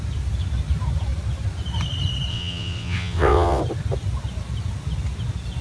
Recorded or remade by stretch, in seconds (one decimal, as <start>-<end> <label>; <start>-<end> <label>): 0.0-2.3 recorded; 2.3-3.6 remade; 3.6-5.6 recorded